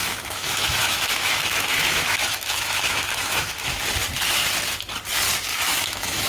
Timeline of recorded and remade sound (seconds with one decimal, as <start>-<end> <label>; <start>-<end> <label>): 0.0-3.8 remade; 3.8-5.5 recorded; 5.5-6.3 remade